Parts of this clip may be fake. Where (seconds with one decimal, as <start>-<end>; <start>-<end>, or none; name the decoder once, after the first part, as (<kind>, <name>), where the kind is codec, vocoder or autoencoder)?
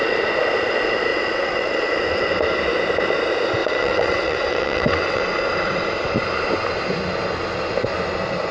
1.1-1.9 (vocoder, WaveNeXt); 3.6-5.2